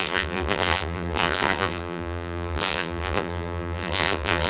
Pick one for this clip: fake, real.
fake